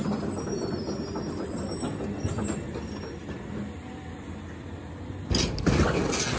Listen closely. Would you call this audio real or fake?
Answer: real